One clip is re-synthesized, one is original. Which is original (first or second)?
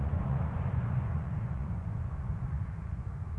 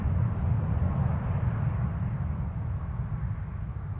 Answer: second